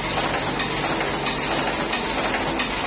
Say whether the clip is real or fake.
real